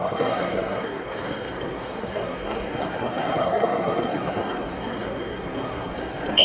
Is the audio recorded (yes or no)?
no